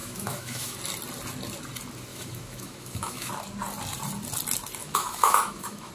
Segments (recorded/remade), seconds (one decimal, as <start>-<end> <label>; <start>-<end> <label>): 0.0-0.8 remade; 0.8-2.1 recorded; 2.1-3.3 remade; 3.3-4.8 recorded; 4.8-5.9 remade